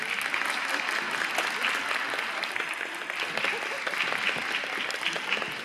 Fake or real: real